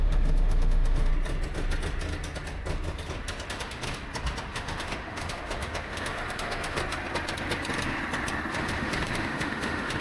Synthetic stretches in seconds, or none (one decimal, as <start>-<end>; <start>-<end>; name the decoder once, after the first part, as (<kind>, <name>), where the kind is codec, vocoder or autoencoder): 0.0-1.1 (autoencoder, DAC-VAE); 3.5-4.0; 4.5-6.8; 8.5-10.0